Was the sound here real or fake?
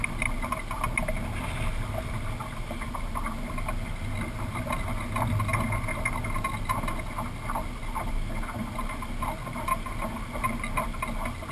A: real